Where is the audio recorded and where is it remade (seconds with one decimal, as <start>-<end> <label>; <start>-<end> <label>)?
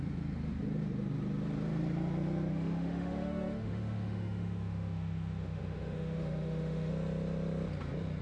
0.0-2.5 recorded; 2.5-6.9 remade; 6.9-8.2 recorded